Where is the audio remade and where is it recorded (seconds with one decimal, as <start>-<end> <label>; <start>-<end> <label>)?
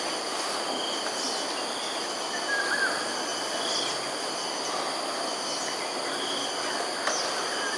0.0-7.8 recorded